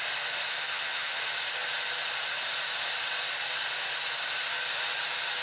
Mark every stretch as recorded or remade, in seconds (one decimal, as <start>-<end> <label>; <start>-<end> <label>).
0.0-0.5 recorded; 0.5-1.2 remade; 1.2-5.4 recorded